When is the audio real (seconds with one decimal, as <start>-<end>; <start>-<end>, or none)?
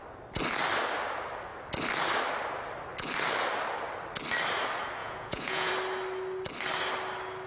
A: 0.0-5.0; 5.7-7.5